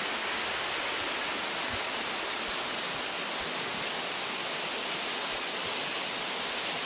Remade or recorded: recorded